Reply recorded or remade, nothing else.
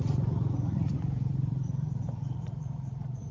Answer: remade